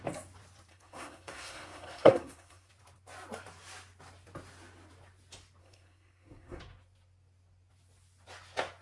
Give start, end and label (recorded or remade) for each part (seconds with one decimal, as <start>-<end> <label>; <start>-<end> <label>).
0.0-0.7 recorded; 0.7-2.7 remade; 2.7-5.6 recorded; 5.6-6.6 remade; 6.6-8.8 recorded

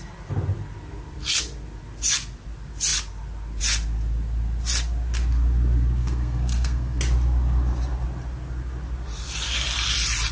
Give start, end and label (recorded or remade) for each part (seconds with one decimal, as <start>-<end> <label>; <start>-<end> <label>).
0.0-6.0 recorded; 6.0-7.0 remade; 7.0-10.3 recorded

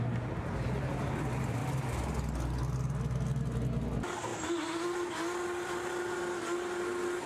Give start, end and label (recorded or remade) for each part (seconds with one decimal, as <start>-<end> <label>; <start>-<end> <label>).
0.0-7.3 recorded

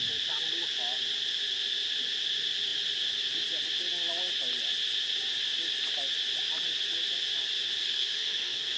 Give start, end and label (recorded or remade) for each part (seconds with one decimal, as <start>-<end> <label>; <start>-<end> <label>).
0.0-7.8 recorded; 7.8-8.8 remade

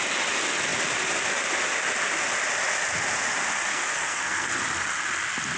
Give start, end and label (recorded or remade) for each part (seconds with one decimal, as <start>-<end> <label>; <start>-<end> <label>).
0.0-3.7 recorded; 3.7-4.6 remade; 4.6-5.6 recorded

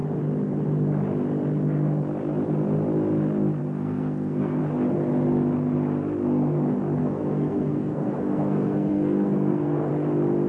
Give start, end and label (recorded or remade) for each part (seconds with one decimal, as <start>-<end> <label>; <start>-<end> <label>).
0.0-3.6 recorded; 3.6-4.6 remade; 4.6-7.0 recorded; 7.0-9.9 remade; 9.9-10.5 recorded

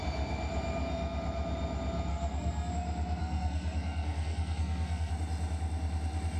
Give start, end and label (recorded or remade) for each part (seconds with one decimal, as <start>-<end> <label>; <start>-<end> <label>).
0.0-2.1 recorded; 2.1-2.7 remade; 2.7-3.2 recorded; 3.2-5.1 remade; 5.1-6.4 recorded